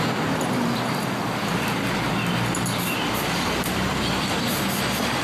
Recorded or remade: remade